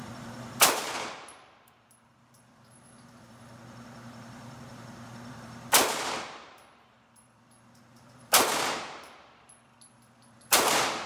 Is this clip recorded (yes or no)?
no